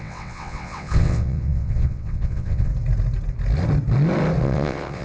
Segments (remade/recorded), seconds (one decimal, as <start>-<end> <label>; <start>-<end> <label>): 0.0-2.7 remade; 2.7-4.4 recorded; 4.4-5.0 remade

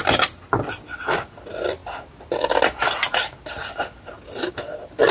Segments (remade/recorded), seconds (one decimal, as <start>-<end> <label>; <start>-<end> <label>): 0.0-5.1 recorded